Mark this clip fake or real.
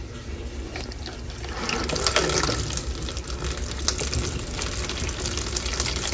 real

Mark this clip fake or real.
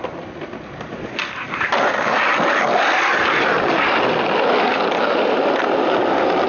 real